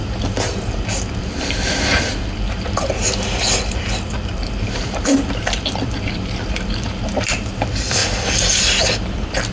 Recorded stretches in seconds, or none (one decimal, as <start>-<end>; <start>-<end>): 0.0-1.2; 2.9-4.1